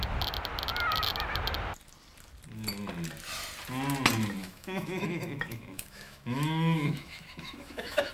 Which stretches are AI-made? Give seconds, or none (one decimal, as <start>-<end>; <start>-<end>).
4.4-8.1